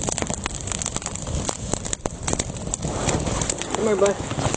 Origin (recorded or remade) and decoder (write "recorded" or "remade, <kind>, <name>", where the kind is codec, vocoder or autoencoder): recorded